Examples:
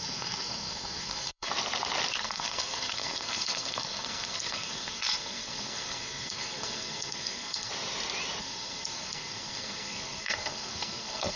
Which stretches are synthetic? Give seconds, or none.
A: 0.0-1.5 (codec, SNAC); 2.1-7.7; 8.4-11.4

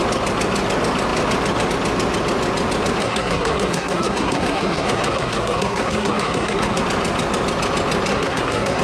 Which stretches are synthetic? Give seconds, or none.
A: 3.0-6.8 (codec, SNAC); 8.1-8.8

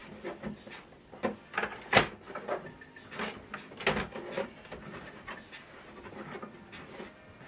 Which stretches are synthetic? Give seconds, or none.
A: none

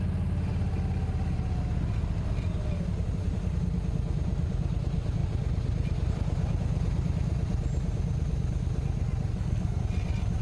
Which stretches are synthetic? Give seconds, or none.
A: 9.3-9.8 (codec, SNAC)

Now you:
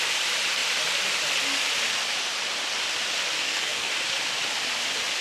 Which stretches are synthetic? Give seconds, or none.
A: 3.4-3.9 (codec, SNAC)

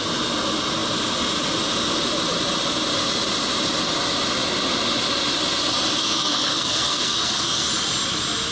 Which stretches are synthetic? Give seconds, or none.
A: 6.0-7.7 (codec, SNAC)